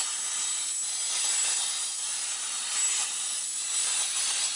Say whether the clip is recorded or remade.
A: recorded